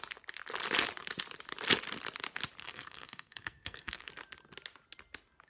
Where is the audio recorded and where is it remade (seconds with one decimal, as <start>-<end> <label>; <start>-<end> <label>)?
0.0-2.6 recorded; 2.6-4.1 remade; 4.1-5.5 recorded